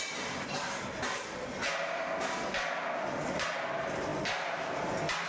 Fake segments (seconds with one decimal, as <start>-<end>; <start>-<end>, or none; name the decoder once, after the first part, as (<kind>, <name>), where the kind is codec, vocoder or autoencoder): none